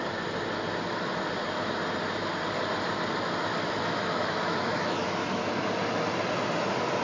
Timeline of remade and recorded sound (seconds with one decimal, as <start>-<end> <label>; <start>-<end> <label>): 0.0-3.5 recorded; 3.5-5.5 remade; 5.5-7.0 recorded